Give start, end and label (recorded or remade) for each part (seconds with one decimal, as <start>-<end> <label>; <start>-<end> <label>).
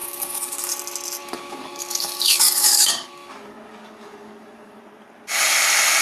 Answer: 0.0-0.7 remade; 0.7-1.2 recorded; 1.2-4.8 remade; 4.8-6.0 recorded